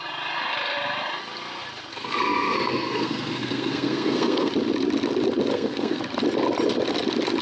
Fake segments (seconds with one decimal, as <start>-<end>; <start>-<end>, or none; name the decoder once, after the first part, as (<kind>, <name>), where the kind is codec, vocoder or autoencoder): 1.9-4.5 (codec, SNAC); 5.5-6.0